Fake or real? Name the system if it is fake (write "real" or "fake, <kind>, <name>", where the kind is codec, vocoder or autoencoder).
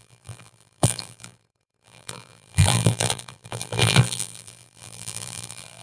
fake, vocoder, BigVGAN v2